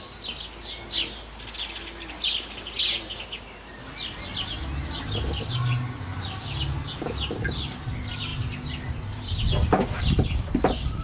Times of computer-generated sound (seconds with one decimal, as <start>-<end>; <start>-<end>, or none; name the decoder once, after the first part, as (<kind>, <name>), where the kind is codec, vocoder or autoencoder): none